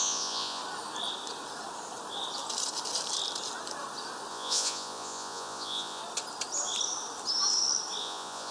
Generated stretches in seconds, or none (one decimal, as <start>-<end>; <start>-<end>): 0.0-0.6; 4.3-6.0; 8.0-8.5